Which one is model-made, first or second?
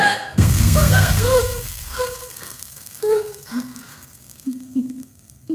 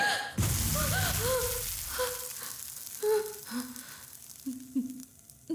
first